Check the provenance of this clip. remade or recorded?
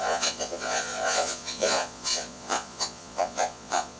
remade